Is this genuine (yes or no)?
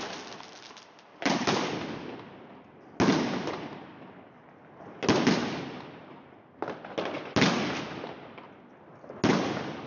yes